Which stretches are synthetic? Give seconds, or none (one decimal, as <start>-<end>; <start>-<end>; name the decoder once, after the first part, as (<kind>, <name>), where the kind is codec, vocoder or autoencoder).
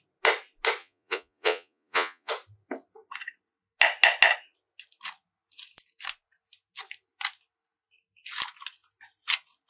0.8-2.3 (vocoder, Vocos)